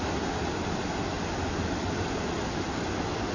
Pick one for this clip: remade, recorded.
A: recorded